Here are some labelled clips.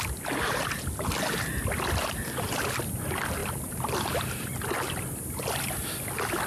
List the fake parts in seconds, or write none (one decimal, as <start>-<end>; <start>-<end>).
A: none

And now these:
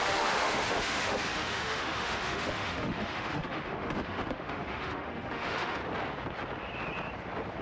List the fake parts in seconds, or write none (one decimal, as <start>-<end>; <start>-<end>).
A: 0.0-5.8

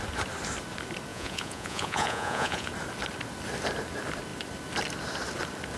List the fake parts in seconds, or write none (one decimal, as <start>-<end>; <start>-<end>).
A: 1.1-2.7

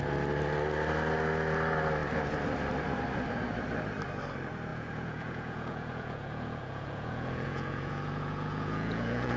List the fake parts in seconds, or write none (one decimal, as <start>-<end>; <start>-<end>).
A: 4.7-9.4

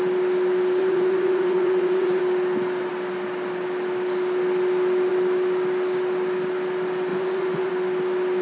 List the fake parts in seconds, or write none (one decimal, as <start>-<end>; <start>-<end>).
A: 0.8-2.2; 7.1-7.7